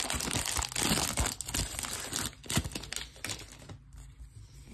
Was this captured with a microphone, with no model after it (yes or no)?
yes